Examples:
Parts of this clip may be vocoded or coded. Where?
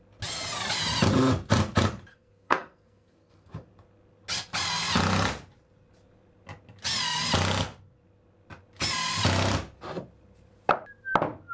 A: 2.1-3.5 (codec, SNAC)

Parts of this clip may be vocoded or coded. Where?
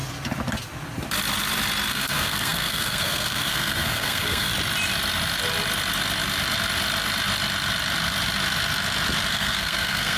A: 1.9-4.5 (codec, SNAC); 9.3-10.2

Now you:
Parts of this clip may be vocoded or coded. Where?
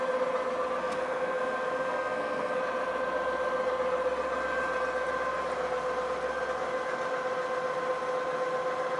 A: 0.8-2.6 (codec, SNAC)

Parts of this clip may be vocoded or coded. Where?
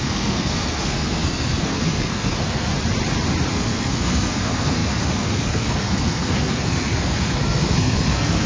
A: 0.0-2.7 (codec, SNAC); 3.5-8.5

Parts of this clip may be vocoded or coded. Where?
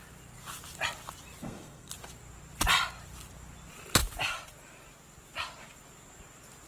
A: 1.4-1.9 (codec, SNAC)